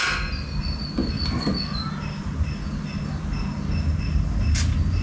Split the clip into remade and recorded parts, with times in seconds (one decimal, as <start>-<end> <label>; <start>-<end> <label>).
0.0-5.0 recorded